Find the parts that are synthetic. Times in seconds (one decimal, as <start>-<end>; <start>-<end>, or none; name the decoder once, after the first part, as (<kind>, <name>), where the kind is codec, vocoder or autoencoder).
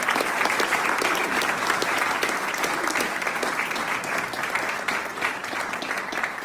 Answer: none